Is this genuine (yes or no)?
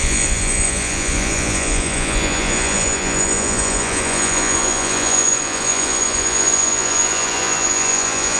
no